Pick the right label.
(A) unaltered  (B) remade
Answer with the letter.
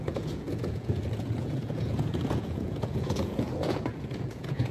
B